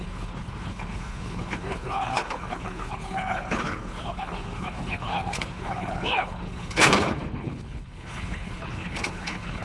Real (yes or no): no